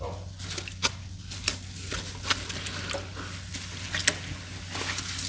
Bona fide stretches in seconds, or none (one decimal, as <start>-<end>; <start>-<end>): 0.0-5.3